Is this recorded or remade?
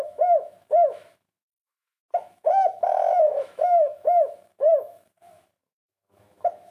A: remade